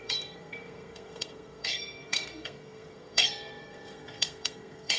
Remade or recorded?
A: remade